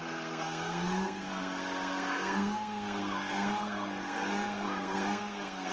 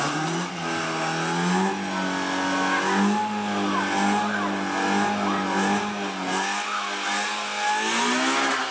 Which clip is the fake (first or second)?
first